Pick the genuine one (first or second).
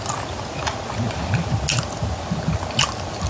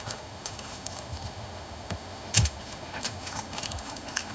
first